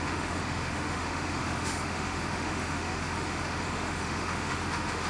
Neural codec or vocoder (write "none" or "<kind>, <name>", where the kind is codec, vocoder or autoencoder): autoencoder, DAC-VAE